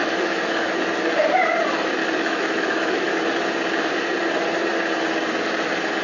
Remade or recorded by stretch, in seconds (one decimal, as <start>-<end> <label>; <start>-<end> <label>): 0.0-0.9 remade; 0.9-2.0 recorded; 2.0-3.1 remade; 3.1-6.0 recorded